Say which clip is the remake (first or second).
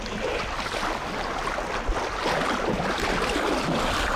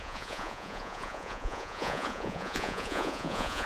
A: second